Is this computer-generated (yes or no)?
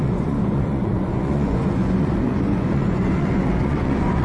yes